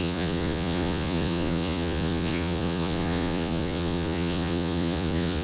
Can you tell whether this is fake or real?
fake